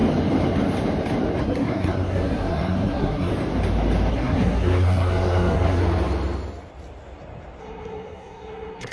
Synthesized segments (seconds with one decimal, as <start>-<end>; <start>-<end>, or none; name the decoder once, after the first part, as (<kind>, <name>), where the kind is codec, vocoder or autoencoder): 1.4-3.3 (codec, SNAC); 4.1-5.8; 7.6-8.9